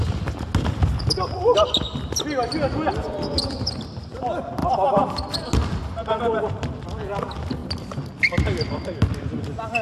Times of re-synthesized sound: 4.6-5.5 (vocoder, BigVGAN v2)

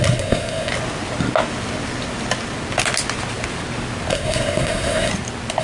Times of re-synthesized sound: 0.0-0.7 (codec, SNAC); 4.1-5.1

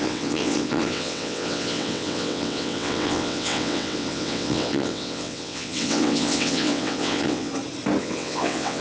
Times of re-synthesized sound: 0.0-7.5 (vocoder, WaveNeXt); 8.0-8.8

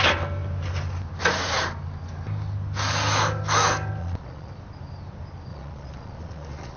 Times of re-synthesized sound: 4.0-4.5 (vocoder, Vocos); 5.5-6.8

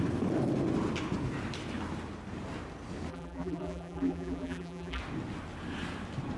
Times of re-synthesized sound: 3.1-5.0 (vocoder, BigVGAN v2)